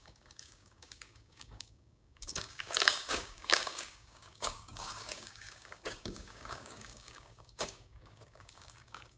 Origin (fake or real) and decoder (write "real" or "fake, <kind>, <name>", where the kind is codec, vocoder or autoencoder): fake, codec, DAC